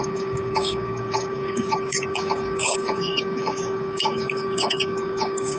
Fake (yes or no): yes